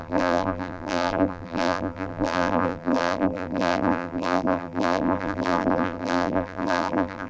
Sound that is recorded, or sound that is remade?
remade